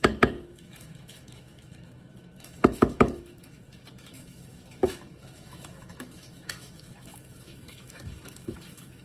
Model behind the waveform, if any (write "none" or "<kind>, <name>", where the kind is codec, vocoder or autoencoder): autoencoder, DAC-VAE